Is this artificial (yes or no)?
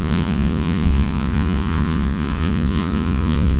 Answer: yes